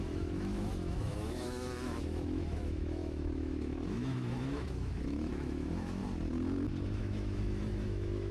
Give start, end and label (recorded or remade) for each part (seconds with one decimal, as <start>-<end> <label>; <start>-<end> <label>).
0.0-6.0 remade; 6.0-7.0 recorded; 7.0-8.3 remade